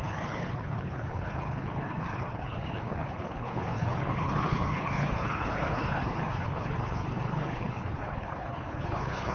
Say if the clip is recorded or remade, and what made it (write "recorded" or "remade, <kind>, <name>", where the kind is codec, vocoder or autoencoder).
remade, codec, HILCodec